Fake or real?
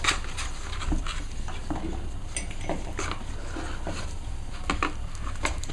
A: real